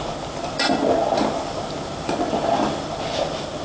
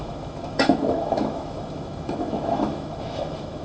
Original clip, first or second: first